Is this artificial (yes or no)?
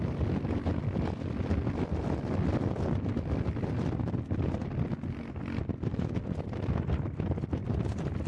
no